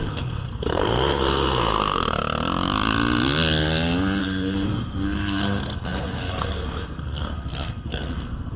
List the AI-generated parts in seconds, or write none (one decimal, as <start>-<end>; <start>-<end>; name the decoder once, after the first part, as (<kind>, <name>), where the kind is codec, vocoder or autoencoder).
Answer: 0.0-2.2 (codec, SNAC); 4.2-8.6